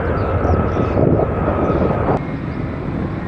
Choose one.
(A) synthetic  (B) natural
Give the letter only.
B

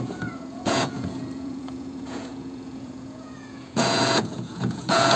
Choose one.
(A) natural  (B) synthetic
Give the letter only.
B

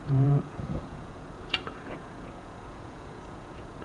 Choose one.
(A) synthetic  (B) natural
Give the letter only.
A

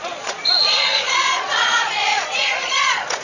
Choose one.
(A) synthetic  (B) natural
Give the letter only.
A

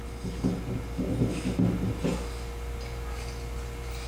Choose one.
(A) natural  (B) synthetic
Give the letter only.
A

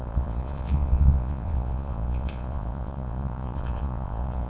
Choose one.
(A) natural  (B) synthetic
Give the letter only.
B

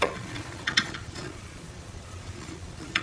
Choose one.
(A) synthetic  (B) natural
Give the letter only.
A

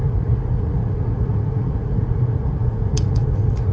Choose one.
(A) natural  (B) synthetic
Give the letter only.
B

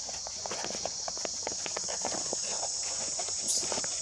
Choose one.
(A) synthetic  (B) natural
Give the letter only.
A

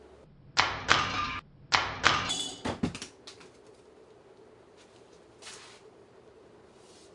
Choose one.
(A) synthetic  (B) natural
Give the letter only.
B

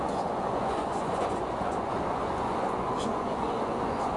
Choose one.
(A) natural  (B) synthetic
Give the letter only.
B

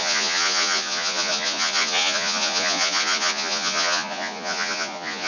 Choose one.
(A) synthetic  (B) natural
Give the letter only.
A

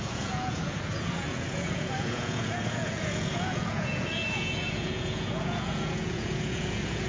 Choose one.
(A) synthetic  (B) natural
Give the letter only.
A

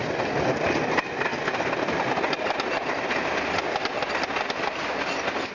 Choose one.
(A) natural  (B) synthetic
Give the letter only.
A